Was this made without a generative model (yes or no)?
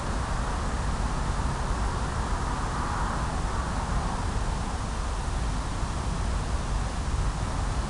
yes